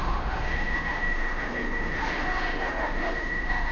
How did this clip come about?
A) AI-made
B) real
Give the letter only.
A